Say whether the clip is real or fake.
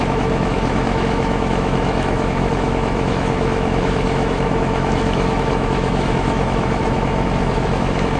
fake